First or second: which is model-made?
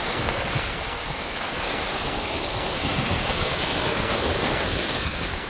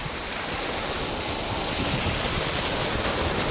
first